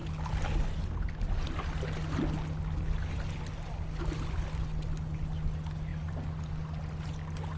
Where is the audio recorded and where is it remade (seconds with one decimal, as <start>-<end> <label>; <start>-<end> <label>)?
0.0-7.6 recorded